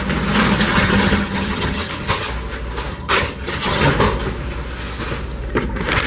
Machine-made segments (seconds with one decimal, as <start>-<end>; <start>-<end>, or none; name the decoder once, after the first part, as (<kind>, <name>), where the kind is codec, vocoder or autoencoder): 0.7-2.3 (vocoder, HiFi-GAN); 2.9-3.9